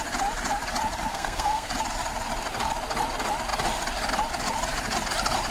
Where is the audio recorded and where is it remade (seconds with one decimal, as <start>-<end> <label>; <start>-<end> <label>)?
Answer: 0.0-1.1 recorded; 1.1-1.7 remade; 1.7-5.5 recorded